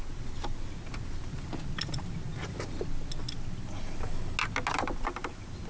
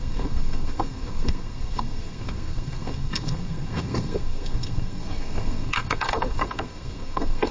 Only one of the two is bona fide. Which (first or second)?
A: first